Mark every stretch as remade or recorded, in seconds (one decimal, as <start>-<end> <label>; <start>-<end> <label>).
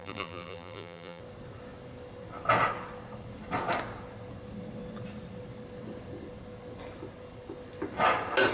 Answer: 0.0-1.2 remade; 1.2-8.5 recorded